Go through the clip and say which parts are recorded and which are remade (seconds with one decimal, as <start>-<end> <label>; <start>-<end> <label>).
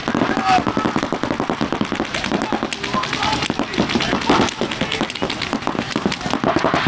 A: 0.0-6.9 recorded